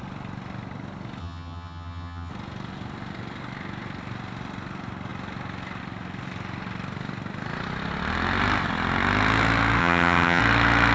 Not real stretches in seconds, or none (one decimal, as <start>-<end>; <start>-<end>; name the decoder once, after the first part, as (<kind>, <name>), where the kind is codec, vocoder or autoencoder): 1.2-2.3 (vocoder, HiFi-GAN); 9.8-10.4